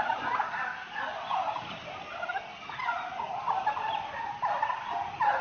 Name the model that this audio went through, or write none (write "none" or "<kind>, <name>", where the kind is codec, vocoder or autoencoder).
none